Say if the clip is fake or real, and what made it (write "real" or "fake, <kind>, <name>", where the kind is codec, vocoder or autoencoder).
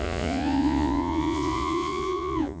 fake, vocoder, Vocos